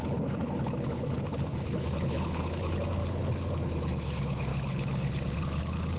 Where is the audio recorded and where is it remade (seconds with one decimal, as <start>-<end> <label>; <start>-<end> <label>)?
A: 0.0-6.0 remade